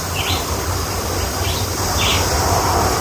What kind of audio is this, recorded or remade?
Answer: recorded